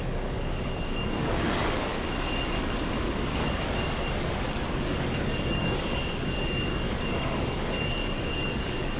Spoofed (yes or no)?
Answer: yes